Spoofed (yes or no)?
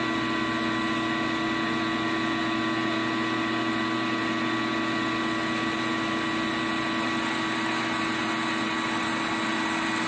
no